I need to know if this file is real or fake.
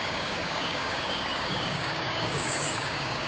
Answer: fake